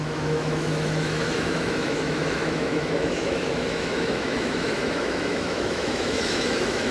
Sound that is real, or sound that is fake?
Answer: fake